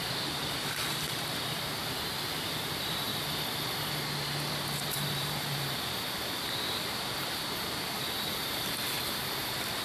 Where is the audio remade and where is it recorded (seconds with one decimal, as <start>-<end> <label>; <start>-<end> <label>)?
0.0-3.1 remade; 3.1-4.8 recorded; 4.8-9.8 remade